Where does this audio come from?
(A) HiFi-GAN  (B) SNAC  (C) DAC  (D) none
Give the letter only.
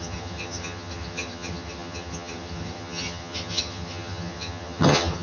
A